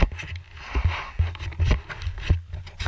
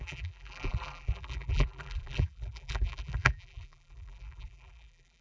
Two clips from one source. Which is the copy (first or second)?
second